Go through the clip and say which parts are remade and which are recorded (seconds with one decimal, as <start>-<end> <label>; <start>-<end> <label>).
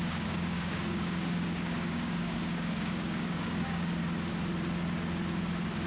0.0-4.0 remade; 4.0-5.9 recorded